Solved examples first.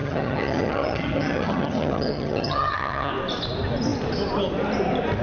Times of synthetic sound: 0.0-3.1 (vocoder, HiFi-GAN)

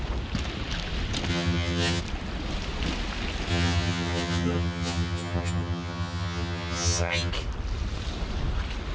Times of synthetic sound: 1.3-2.0 (vocoder, HiFi-GAN); 3.5-7.3

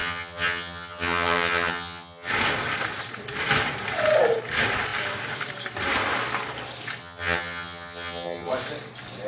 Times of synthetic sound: 0.0-2.3 (vocoder, HiFi-GAN); 7.0-8.5

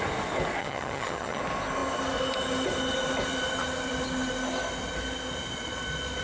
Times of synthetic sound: 0.6-1.4 (vocoder, HiFi-GAN)